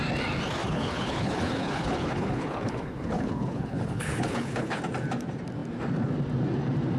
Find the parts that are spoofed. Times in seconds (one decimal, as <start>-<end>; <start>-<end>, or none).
0.6-4.8